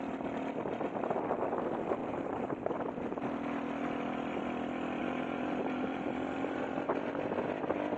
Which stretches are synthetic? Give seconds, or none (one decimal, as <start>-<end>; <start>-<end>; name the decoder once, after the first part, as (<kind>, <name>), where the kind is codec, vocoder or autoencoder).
2.0-2.5 (vocoder, BigVGAN v2); 5.0-7.1